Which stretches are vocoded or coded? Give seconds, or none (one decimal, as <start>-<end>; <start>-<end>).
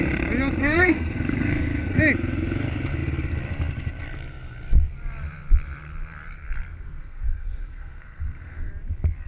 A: 0.6-2.0; 7.0-8.7